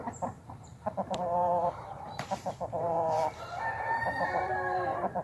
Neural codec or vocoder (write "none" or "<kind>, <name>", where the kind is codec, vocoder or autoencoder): vocoder, BigVGAN v2